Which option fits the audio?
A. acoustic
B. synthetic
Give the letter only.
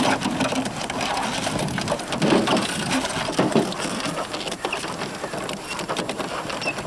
A